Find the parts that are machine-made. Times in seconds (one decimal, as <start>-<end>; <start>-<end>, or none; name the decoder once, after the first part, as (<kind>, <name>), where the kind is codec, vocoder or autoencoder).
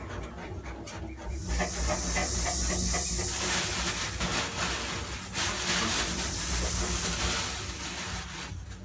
none